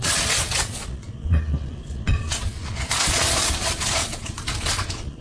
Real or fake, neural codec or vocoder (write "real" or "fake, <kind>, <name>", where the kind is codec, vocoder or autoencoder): fake, vocoder, Vocos